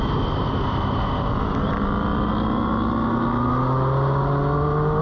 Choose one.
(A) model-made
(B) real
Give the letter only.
B